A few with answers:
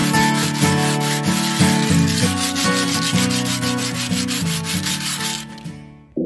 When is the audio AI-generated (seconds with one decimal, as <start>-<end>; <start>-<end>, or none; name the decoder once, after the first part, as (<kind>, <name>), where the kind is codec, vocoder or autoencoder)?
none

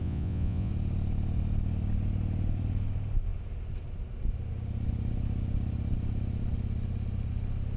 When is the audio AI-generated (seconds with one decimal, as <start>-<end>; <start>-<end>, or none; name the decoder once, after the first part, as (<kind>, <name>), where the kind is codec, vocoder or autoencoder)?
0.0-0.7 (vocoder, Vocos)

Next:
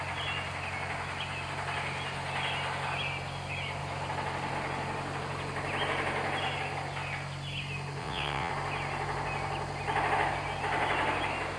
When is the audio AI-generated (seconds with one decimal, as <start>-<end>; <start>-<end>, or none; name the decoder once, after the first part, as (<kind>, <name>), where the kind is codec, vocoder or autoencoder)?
8.0-8.5 (vocoder, WaveNeXt)

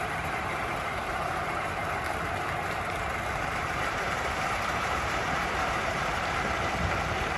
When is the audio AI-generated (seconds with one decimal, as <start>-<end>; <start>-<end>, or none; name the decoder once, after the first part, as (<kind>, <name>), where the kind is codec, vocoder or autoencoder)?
0.0-1.8 (vocoder, BigVGAN v2); 3.4-7.4

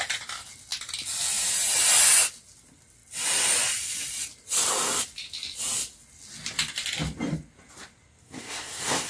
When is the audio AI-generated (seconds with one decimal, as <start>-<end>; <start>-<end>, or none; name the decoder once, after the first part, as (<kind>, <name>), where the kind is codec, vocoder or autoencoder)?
8.2-9.1 (codec, SNAC)

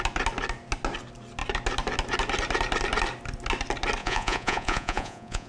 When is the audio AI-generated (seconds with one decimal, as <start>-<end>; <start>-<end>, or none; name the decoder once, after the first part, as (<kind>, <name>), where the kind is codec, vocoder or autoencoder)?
4.0-5.5 (vocoder, Vocos)

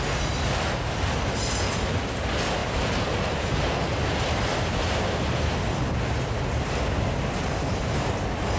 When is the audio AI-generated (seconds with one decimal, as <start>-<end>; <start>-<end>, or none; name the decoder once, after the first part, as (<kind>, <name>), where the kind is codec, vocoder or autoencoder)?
none

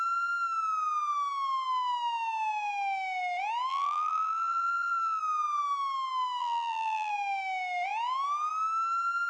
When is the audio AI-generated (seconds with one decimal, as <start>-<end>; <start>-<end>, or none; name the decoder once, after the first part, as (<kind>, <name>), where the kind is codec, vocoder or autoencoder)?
3.7-5.2 (vocoder, BigVGAN v2); 6.4-7.1